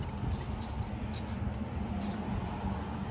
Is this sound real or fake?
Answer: real